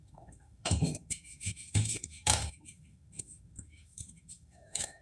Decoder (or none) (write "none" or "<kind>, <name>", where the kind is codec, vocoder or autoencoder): autoencoder, DAC-VAE